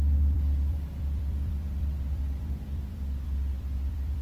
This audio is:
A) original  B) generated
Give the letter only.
B